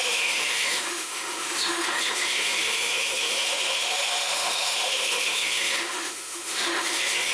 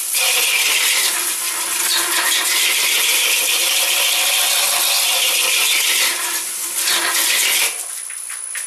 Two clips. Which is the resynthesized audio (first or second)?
first